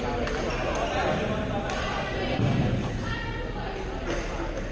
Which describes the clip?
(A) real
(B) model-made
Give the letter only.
A